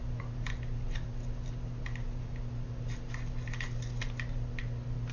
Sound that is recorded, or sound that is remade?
recorded